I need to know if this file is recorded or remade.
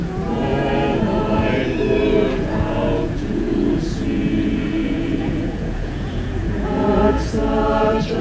remade